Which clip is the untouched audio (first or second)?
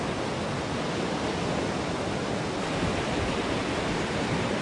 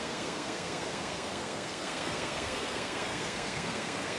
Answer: first